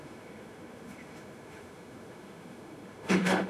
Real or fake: fake